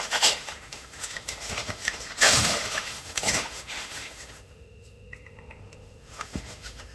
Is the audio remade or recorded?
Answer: remade